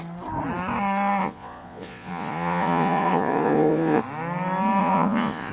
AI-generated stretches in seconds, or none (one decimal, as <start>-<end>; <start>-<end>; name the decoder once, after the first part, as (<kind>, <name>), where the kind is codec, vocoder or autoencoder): 1.2-4.0 (vocoder, Vocos); 4.8-5.5